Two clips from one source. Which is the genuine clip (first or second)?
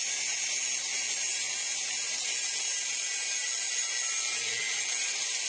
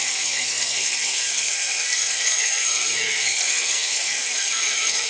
first